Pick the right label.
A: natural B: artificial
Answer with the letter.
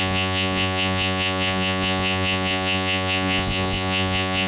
B